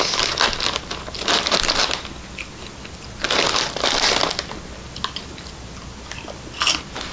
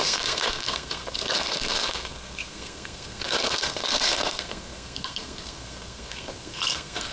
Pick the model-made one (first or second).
second